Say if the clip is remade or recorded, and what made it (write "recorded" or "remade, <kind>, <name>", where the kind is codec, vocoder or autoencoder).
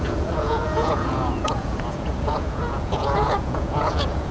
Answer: remade, vocoder, Vocos